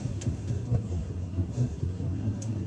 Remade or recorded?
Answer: remade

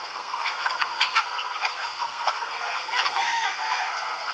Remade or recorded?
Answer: remade